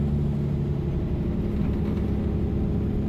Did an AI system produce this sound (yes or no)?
no